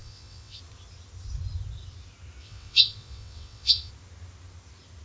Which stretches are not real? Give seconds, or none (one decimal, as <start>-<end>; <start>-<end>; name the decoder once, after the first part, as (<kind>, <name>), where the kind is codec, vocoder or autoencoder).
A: 0.0-0.6 (vocoder, WaveNeXt); 2.4-3.9